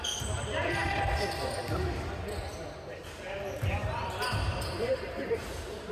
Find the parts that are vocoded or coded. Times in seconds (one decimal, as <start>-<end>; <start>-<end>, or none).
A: 3.7-5.9